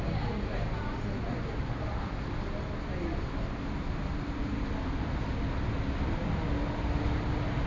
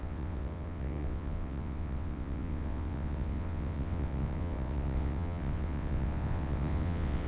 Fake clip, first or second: second